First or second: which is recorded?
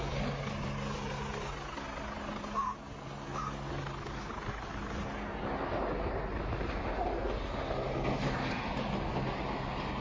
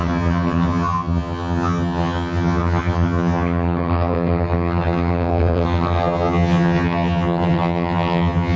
first